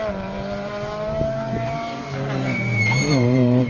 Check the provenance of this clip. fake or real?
fake